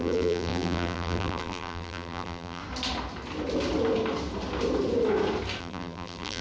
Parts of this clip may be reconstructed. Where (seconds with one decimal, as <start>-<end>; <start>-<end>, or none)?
0.0-2.6; 5.6-6.4